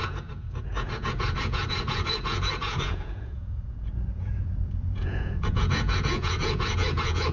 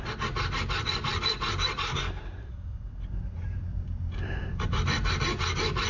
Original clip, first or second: second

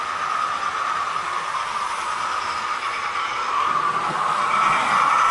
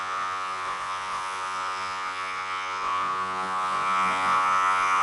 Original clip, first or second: first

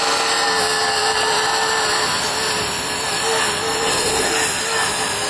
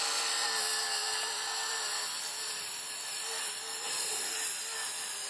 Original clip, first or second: first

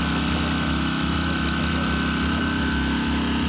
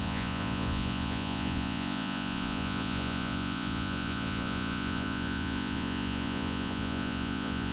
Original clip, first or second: first